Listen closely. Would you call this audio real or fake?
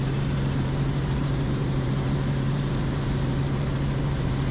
fake